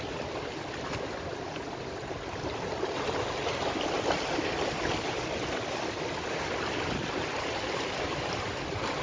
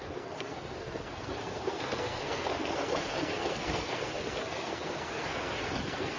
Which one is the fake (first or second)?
second